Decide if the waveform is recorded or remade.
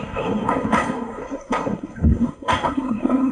remade